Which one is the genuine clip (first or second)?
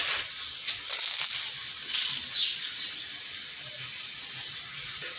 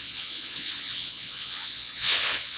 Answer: first